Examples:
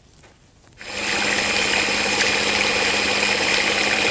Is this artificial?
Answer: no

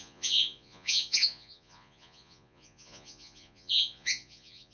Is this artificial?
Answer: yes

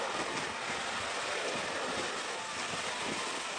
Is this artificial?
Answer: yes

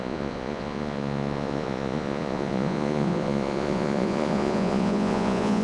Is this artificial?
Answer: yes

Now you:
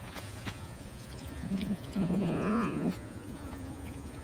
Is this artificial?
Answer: yes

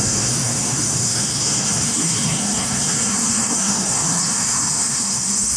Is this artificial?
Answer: yes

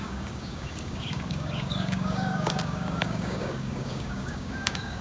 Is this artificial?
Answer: yes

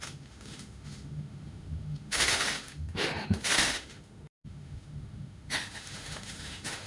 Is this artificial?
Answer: yes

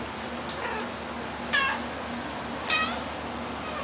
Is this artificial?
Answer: no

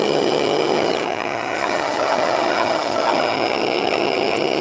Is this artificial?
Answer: yes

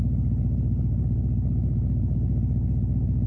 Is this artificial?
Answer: no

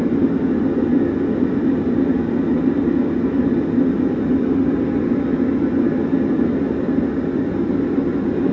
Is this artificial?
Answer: no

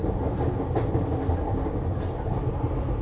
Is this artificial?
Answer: no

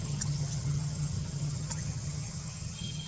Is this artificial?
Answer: yes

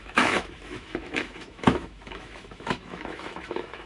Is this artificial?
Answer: yes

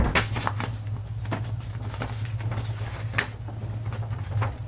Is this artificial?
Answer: no